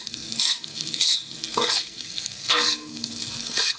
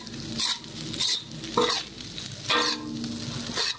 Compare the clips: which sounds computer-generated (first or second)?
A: first